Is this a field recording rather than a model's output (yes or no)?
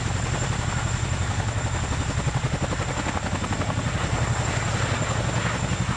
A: yes